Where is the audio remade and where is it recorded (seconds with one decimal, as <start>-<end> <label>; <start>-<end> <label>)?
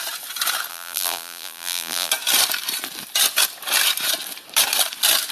0.0-0.7 recorded; 0.7-2.1 remade; 2.1-5.3 recorded